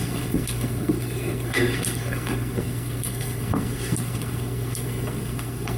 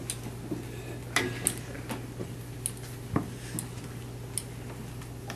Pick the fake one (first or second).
first